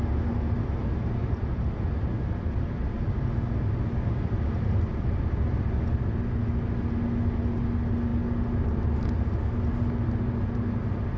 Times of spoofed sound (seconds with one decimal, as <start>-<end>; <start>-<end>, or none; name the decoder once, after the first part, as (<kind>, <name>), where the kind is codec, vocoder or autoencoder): none